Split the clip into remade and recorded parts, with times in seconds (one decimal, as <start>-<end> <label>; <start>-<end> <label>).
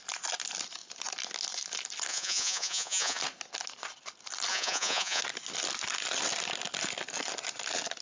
0.0-2.1 recorded; 2.1-3.2 remade; 3.2-4.5 recorded; 4.5-5.2 remade; 5.2-8.0 recorded